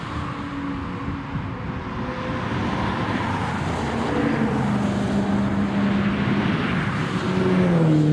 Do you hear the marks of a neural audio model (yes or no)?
no